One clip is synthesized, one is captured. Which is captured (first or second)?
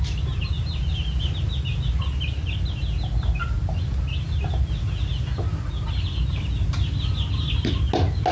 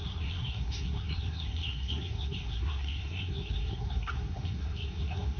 first